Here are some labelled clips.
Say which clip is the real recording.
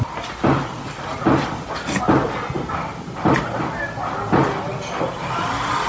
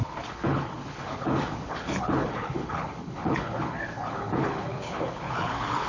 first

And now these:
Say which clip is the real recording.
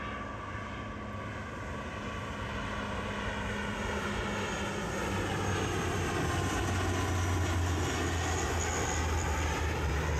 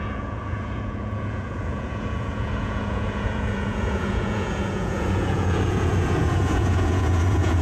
first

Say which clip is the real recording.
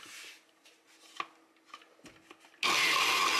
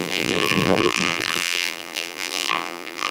first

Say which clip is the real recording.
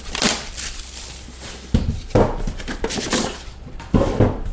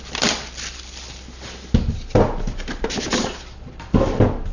second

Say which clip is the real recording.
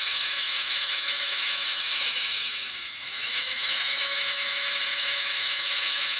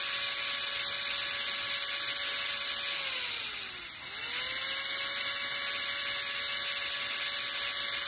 second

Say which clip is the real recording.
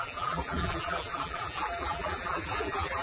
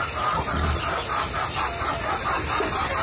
second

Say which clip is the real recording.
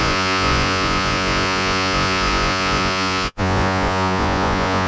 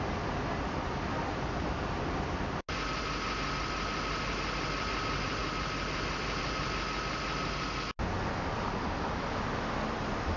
second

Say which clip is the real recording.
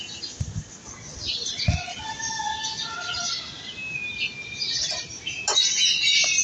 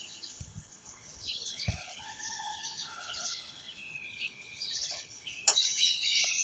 first